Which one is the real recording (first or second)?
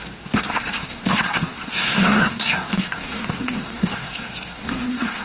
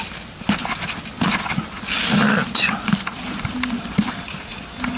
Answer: second